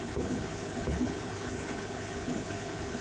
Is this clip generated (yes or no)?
yes